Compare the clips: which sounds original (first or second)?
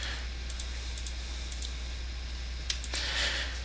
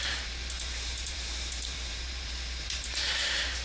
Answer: first